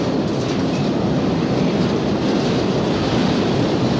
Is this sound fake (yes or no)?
no